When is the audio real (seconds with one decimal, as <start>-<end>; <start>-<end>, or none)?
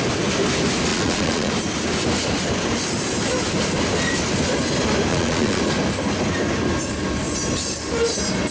0.0-0.9; 1.5-5.1; 5.6-8.5